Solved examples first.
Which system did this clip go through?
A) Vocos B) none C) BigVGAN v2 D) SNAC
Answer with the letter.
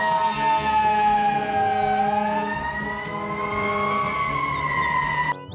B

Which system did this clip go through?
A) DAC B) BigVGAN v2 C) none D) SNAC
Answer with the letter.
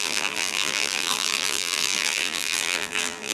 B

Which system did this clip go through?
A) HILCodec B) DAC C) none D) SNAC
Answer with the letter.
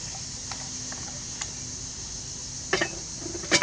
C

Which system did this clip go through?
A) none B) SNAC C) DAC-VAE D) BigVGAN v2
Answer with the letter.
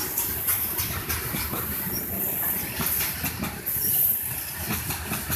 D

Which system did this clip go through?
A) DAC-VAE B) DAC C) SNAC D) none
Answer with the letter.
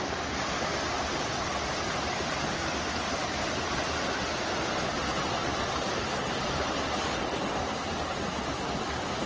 D